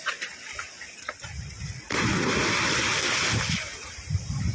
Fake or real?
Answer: real